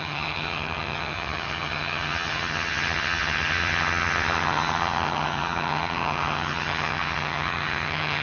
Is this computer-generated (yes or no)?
yes